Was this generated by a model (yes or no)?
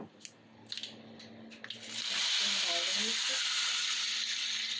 no